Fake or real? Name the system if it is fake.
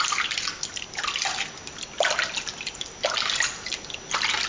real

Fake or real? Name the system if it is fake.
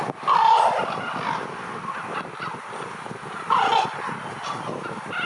real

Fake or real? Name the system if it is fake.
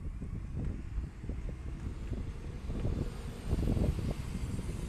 real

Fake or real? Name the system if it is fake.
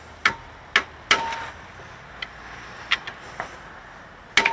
real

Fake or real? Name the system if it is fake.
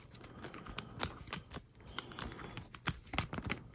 real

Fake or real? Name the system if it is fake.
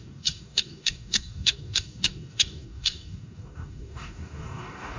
fake, codec, DAC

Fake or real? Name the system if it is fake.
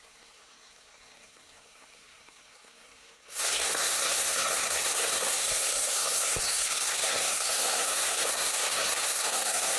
fake, codec, SNAC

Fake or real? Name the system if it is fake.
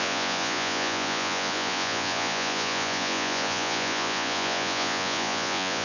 fake, vocoder, Vocos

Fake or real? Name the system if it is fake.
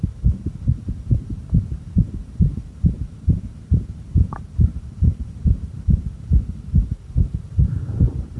fake, vocoder, BigVGAN v2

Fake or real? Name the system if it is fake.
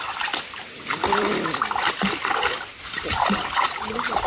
fake, vocoder, BigVGAN v2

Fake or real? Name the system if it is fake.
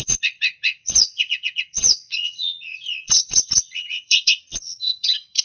fake, vocoder, WaveNeXt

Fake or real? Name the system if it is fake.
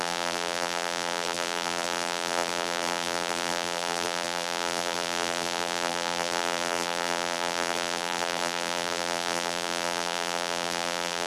fake, vocoder, BigVGAN v2